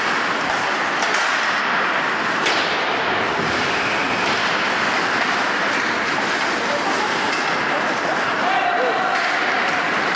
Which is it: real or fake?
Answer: real